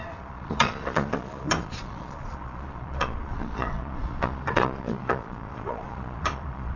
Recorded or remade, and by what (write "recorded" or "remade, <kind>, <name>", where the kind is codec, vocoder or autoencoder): remade, vocoder, Vocos